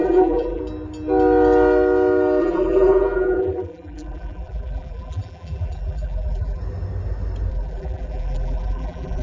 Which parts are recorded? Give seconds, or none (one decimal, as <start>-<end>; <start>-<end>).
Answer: 0.6-2.4; 6.6-7.5